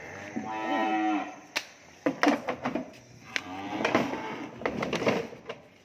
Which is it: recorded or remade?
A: recorded